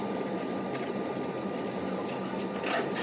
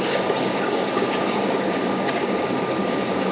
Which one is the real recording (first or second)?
first